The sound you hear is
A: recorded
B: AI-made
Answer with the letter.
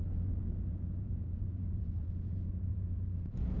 B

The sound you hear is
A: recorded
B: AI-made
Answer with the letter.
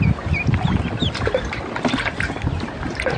A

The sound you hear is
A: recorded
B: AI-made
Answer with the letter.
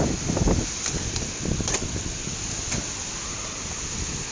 A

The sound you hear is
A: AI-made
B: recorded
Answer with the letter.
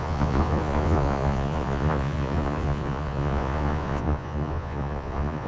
A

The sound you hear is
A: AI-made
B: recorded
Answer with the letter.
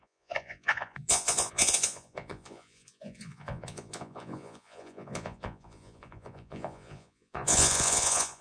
A